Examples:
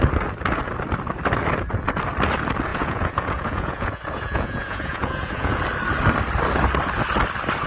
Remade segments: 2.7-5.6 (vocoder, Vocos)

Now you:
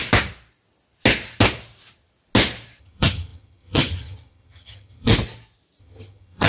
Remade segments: 2.8-5.1 (vocoder, HiFi-GAN); 5.8-6.5

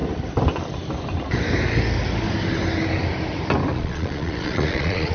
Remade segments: 3.7-5.1 (vocoder, Vocos)

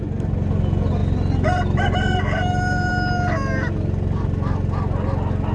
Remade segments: none

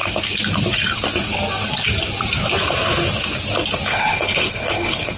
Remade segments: 3.9-5.2 (codec, HILCodec)

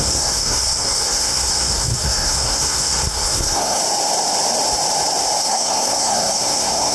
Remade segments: 0.0-3.8 (codec, SNAC); 5.4-6.9

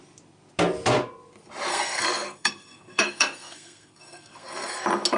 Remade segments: 1.7-4.8 (codec, SNAC)